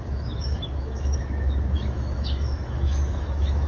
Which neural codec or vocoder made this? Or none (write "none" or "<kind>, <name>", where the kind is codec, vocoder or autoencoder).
autoencoder, DAC-VAE